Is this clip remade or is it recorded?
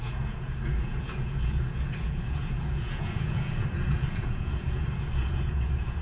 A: remade